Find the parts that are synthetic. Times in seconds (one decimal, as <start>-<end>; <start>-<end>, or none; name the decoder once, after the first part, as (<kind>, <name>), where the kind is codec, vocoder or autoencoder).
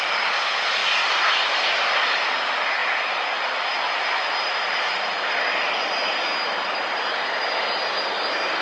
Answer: 0.8-1.3 (vocoder, BigVGAN v2)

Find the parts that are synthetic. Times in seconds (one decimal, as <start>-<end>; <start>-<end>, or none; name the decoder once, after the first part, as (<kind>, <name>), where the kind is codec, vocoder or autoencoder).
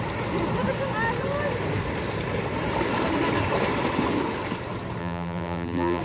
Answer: 5.0-6.0 (vocoder, BigVGAN v2)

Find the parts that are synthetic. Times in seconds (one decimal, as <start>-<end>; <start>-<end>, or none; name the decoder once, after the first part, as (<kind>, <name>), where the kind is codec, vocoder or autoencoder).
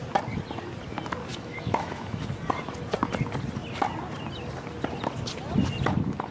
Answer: 1.3-2.2 (autoencoder, DAC-VAE)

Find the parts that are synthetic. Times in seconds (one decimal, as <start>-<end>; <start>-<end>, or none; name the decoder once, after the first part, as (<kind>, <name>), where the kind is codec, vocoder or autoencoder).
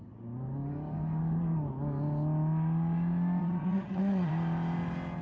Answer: 3.4-4.3 (vocoder, HiFi-GAN)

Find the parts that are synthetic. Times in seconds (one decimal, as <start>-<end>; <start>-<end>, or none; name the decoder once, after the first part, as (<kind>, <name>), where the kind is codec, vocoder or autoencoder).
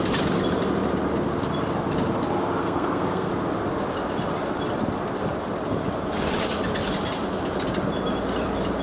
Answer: 2.6-3.3 (codec, SNAC)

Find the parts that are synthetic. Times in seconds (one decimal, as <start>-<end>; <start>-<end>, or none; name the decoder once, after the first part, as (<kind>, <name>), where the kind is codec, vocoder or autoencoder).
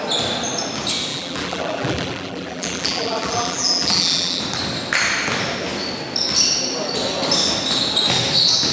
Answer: 1.1-4.4 (vocoder, BigVGAN v2)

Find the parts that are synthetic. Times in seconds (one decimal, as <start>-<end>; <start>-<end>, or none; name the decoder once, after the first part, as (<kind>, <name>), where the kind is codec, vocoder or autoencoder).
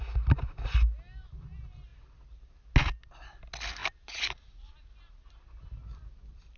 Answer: none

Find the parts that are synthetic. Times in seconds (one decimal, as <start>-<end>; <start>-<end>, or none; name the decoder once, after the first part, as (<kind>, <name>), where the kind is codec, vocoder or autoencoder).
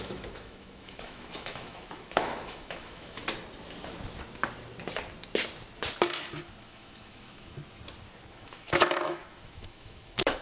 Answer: 0.0-3.2 (autoencoder, DAC-VAE); 6.6-7.5; 8.3-10.4